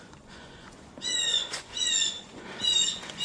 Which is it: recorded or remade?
remade